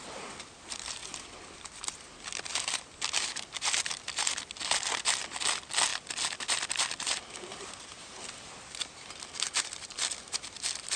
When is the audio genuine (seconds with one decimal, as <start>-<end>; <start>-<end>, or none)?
0.0-1.0; 1.8-5.9